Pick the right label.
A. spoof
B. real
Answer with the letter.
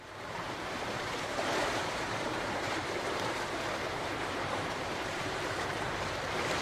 A